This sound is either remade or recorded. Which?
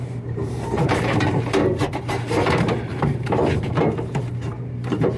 remade